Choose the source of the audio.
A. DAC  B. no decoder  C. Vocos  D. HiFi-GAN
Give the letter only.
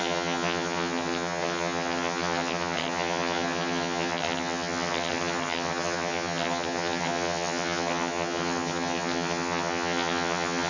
D